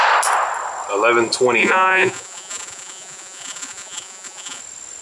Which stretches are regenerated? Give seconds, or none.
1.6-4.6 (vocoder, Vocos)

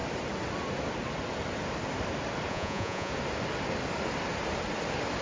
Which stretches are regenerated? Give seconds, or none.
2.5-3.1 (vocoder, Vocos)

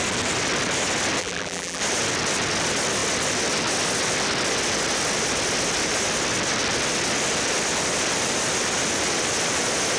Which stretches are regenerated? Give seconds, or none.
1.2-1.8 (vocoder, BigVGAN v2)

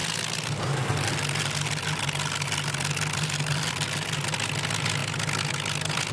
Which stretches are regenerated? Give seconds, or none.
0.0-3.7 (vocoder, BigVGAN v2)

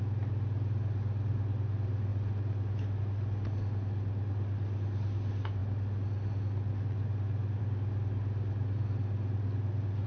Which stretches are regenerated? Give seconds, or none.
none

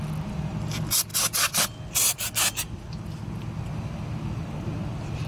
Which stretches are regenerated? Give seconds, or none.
none